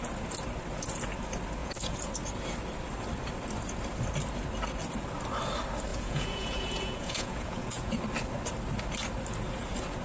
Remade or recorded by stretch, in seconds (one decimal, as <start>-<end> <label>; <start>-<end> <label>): 0.0-1.6 recorded; 1.6-2.1 remade; 2.1-5.9 recorded; 5.9-8.0 remade; 8.0-10.0 recorded